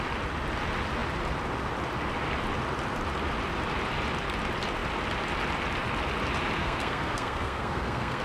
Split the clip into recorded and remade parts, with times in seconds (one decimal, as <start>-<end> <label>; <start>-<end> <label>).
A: 0.0-6.6 recorded; 6.6-8.2 remade